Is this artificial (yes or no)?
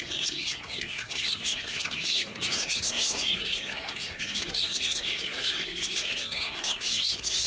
yes